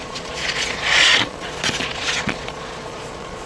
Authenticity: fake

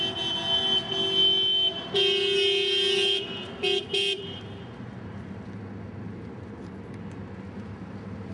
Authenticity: real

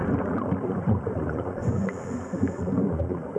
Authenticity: fake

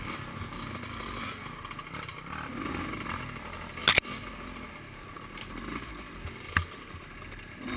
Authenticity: real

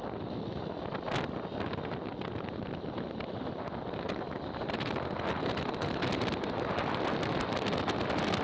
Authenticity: real